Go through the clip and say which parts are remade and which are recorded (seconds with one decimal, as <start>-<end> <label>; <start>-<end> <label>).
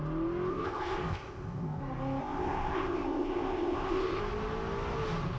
0.0-0.5 recorded; 0.5-1.8 remade; 1.8-2.2 recorded; 2.2-4.2 remade; 4.2-5.4 recorded